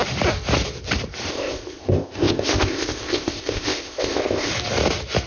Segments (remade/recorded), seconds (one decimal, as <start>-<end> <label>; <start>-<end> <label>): 0.0-1.3 recorded; 1.3-4.5 remade; 4.5-5.3 recorded